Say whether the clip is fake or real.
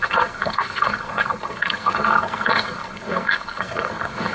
fake